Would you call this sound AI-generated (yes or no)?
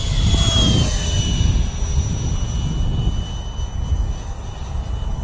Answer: no